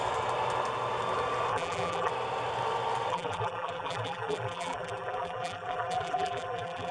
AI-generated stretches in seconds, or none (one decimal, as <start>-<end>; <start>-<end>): 1.5-2.1; 3.1-6.9